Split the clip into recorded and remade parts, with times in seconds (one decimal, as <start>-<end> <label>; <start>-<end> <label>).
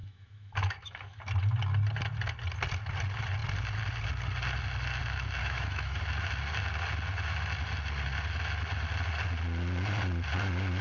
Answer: 0.0-1.2 remade; 1.2-5.4 recorded; 5.4-6.0 remade; 6.0-10.8 recorded